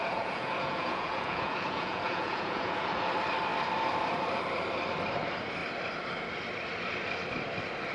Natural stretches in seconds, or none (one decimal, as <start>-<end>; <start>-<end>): 3.1-7.9